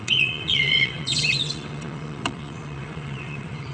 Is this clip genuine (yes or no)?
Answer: no